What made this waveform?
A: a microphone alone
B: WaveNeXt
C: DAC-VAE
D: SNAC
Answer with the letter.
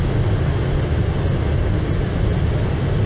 A